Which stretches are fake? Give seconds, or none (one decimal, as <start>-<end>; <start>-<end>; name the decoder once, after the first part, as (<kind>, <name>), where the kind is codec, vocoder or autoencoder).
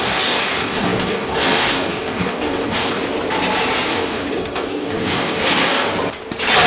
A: 0.0-3.0 (codec, DAC); 3.9-5.9